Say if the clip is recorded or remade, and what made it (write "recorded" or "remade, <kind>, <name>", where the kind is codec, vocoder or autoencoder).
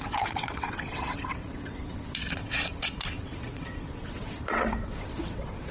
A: remade, vocoder, WaveNeXt